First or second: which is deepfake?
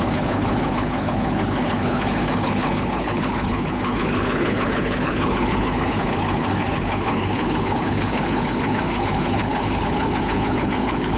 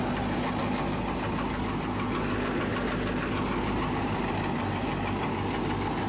first